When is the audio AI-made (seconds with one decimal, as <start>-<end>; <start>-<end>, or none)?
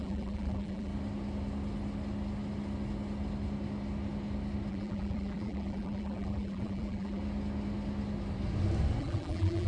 0.0-0.9; 4.7-7.2; 9.0-9.7